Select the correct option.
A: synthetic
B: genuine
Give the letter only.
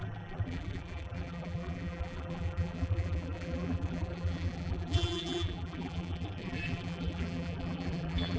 A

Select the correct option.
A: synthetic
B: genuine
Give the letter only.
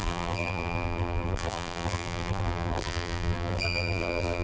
A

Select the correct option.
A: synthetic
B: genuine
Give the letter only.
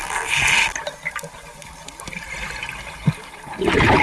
B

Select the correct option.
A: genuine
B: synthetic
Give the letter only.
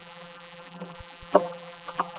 B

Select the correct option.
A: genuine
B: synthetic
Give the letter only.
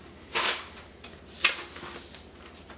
A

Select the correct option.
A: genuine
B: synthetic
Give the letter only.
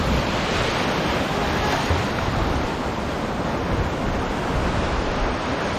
A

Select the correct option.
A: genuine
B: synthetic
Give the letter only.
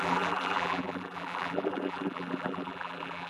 B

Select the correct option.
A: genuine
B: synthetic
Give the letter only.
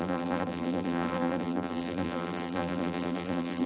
B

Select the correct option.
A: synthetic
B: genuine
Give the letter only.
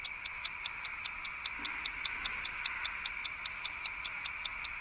B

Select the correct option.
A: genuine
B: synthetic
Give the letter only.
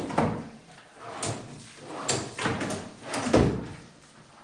A